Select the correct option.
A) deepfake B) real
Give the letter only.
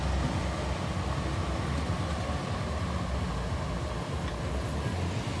B